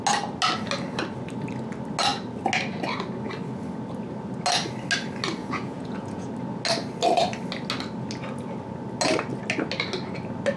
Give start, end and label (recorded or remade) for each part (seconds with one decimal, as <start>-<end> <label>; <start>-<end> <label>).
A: 0.0-5.4 recorded; 5.4-6.3 remade; 6.3-10.6 recorded